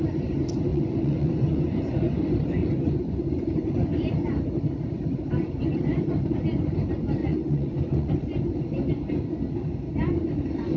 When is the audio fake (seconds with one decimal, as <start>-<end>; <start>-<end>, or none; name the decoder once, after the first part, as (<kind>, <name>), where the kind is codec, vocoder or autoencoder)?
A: 0.7-2.2 (vocoder, Vocos); 2.6-3.2; 7.2-8.1